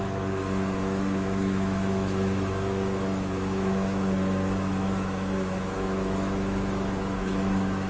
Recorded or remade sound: remade